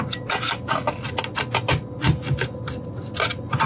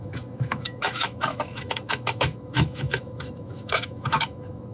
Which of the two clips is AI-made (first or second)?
second